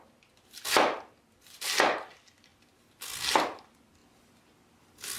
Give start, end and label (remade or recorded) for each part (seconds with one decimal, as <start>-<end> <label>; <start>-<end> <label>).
0.0-5.2 recorded